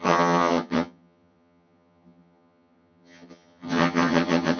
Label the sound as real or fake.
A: fake